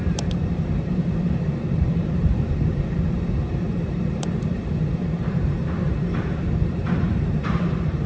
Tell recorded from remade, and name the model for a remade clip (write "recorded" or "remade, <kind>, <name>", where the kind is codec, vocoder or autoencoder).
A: remade, vocoder, BigVGAN v2